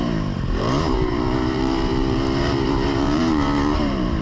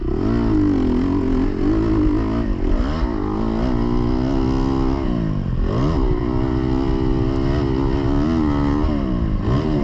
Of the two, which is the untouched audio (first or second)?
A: second